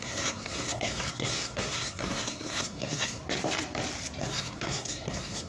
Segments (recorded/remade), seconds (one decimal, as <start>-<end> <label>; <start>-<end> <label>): 0.0-3.2 remade; 3.2-4.2 recorded; 4.2-5.5 remade